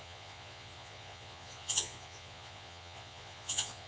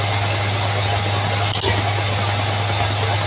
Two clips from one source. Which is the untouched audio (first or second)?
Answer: second